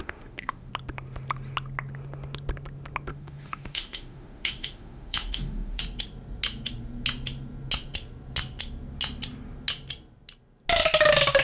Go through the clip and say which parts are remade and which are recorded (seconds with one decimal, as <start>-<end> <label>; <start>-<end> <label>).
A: 0.0-0.7 remade; 0.7-3.1 recorded; 3.1-5.8 remade; 5.8-11.4 recorded